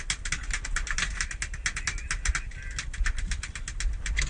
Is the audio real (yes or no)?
yes